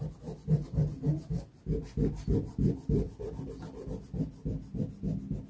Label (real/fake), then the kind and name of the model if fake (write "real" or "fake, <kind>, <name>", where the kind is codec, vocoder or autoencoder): real